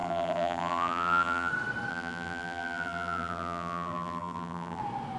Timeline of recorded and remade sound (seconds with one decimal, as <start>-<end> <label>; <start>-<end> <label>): 0.0-1.5 remade; 1.5-1.9 recorded; 1.9-4.8 remade; 4.8-5.2 recorded